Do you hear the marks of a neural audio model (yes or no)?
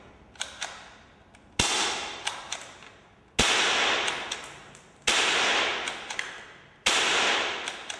no